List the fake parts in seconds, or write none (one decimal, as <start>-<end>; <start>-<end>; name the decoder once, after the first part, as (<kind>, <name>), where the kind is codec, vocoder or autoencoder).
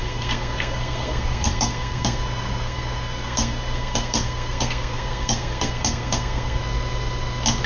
0.0-6.6 (codec, SNAC)